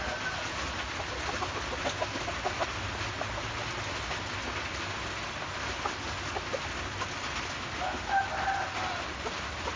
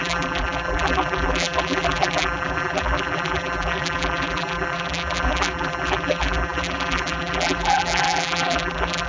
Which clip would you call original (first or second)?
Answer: first